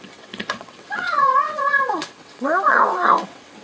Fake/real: fake